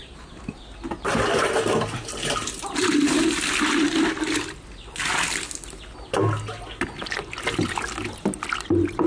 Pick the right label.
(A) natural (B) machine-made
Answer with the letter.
A